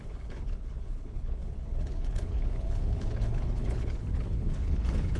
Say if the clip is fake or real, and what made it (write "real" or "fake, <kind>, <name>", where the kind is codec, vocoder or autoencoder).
fake, codec, HILCodec